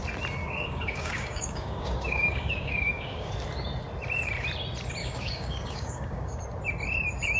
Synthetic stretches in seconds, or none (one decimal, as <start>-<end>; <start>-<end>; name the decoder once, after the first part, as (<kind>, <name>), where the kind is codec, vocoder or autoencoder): 0.4-3.3 (codec, DAC); 5.0-6.4